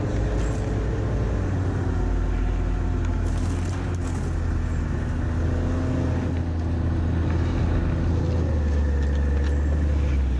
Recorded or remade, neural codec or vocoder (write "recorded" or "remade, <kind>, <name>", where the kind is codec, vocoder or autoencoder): recorded